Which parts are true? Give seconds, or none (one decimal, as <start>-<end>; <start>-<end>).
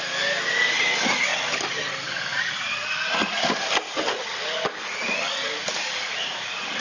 0.0-6.8